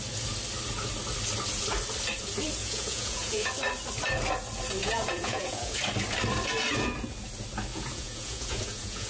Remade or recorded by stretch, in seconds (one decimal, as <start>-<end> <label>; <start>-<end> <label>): 0.0-2.6 recorded; 2.6-3.5 remade; 3.5-4.8 recorded; 4.8-5.8 remade; 5.8-7.7 recorded; 7.7-9.1 remade